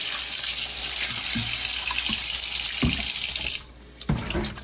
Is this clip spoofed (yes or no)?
no